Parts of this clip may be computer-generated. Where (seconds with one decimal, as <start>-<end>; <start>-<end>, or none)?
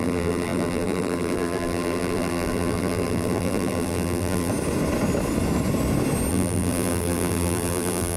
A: 0.0-4.5; 6.3-8.2